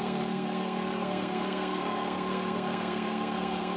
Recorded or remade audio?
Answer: remade